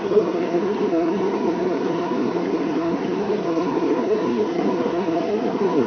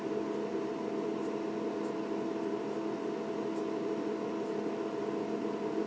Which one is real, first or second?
second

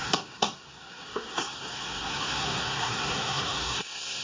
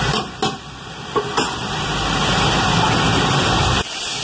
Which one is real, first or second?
second